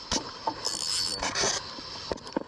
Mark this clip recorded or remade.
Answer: recorded